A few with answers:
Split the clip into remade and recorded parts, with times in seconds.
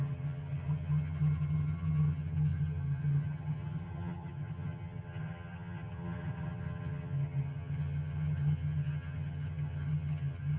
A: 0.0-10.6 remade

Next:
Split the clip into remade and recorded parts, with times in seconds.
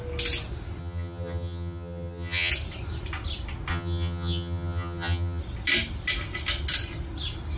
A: 0.0-0.8 recorded; 0.8-2.5 remade; 2.5-3.7 recorded; 3.7-5.4 remade; 5.4-7.6 recorded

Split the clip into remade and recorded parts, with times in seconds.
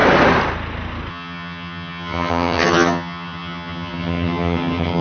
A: 0.0-1.1 recorded; 1.1-5.0 remade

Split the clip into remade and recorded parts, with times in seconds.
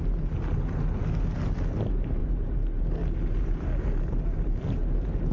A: 0.0-5.3 recorded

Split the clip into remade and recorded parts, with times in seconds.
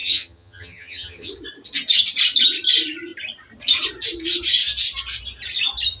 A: 0.0-1.3 remade; 1.3-6.0 recorded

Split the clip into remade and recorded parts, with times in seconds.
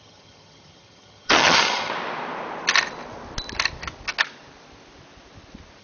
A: 0.0-1.9 remade; 1.9-5.8 recorded